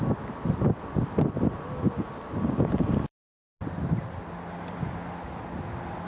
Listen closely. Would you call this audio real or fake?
real